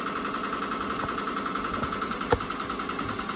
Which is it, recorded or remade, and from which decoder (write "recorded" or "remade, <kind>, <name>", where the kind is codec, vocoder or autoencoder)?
recorded